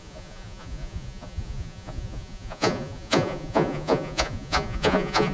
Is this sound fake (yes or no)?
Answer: yes